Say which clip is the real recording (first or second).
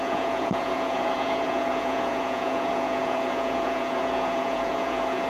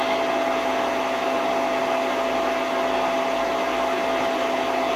second